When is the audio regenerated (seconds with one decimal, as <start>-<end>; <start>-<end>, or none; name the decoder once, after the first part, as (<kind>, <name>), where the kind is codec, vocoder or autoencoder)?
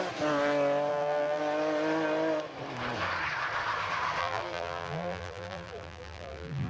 0.9-1.4 (vocoder, BigVGAN v2); 4.2-6.7